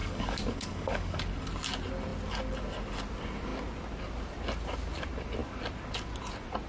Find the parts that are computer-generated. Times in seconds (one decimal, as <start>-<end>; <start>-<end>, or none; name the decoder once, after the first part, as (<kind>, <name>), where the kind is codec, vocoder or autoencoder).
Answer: 0.0-1.2 (codec, DAC)